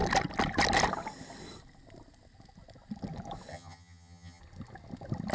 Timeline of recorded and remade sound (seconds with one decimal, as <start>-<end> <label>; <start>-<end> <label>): 0.0-3.5 recorded; 3.5-4.4 remade; 4.4-5.3 recorded